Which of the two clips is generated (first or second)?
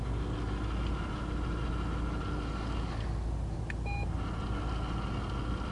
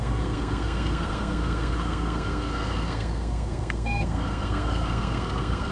second